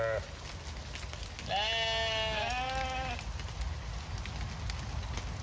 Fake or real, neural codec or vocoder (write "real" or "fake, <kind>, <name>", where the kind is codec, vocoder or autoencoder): real